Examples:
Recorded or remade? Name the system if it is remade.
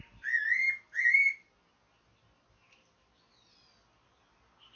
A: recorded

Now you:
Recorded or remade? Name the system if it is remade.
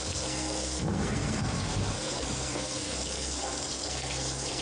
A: remade, codec, SNAC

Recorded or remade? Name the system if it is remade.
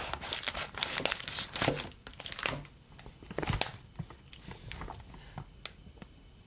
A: recorded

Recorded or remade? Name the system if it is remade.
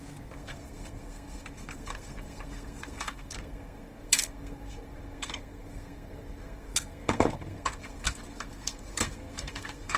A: remade, codec, SNAC